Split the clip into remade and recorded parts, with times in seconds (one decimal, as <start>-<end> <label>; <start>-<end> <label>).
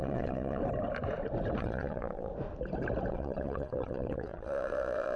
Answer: 0.0-0.6 remade; 0.6-1.6 recorded; 1.6-2.3 remade; 2.3-3.1 recorded; 3.1-5.2 remade